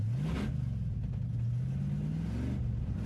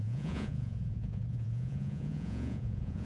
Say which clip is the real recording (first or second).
first